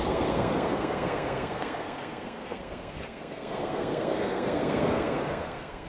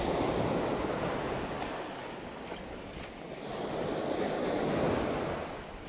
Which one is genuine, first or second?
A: second